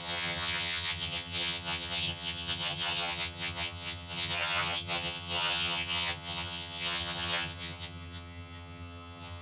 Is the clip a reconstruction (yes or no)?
yes